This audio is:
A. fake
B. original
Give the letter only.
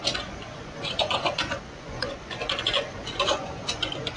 A